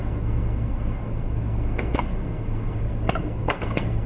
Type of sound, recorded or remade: remade